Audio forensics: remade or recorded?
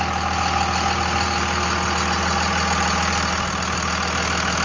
recorded